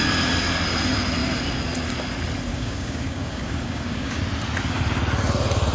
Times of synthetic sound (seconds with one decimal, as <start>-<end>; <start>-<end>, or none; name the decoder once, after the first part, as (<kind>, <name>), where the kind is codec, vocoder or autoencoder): 2.5-4.2 (codec, DAC)